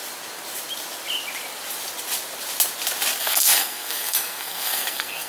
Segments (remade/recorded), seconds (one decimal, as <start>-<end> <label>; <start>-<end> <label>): 0.0-3.2 recorded; 3.2-5.3 remade